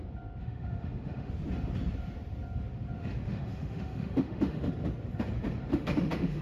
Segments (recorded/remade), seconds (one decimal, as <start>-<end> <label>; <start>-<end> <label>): 0.0-0.4 recorded; 0.4-1.3 remade; 1.3-3.0 recorded; 3.0-4.7 remade; 4.7-5.7 recorded; 5.7-6.4 remade